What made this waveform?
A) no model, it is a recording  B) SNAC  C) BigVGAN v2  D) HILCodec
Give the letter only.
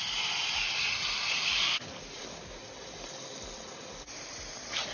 A